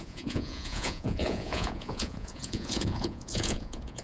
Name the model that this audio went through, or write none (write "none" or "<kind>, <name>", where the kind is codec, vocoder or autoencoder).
vocoder, Vocos